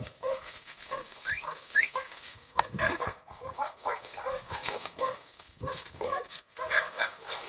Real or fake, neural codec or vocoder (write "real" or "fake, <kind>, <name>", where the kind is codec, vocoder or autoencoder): fake, codec, SNAC